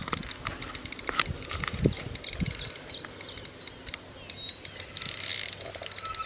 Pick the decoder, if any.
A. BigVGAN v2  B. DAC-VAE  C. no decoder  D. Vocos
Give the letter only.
C